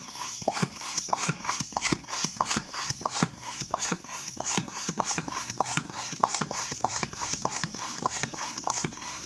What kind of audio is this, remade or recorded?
remade